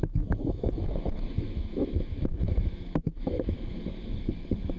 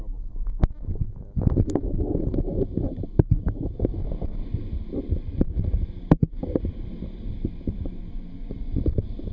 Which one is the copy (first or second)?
first